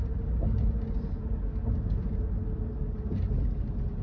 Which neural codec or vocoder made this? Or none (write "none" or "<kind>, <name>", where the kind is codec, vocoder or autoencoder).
none